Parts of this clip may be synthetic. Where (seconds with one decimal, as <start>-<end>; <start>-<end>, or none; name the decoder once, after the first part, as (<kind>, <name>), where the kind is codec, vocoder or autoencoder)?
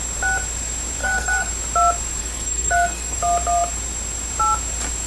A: 1.0-1.5 (codec, SNAC); 2.2-3.2